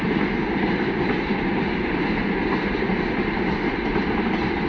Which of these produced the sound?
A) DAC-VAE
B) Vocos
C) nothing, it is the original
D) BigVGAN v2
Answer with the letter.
C